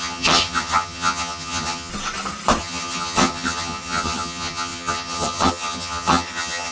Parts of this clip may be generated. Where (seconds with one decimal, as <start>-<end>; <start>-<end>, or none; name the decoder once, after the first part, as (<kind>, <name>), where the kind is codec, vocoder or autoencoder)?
0.0-1.9 (vocoder, HiFi-GAN); 2.6-6.7